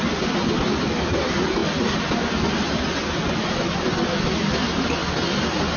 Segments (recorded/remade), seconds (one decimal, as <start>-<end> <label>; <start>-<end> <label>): 0.0-5.8 recorded